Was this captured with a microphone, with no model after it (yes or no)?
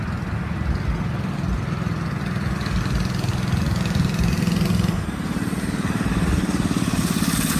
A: yes